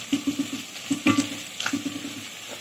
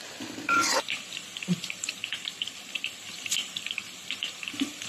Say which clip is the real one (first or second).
first